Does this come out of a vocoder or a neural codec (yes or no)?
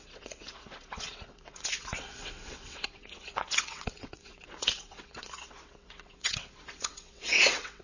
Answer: yes